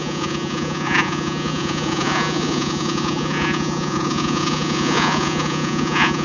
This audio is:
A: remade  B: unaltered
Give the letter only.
A